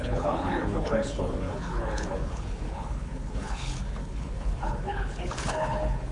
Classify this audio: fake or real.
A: fake